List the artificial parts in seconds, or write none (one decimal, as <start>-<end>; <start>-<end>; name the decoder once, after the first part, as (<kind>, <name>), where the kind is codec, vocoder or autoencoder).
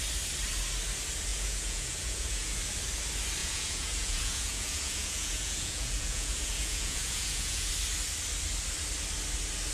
1.3-2.6 (vocoder, Vocos); 3.4-7.7